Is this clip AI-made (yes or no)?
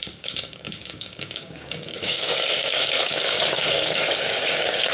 yes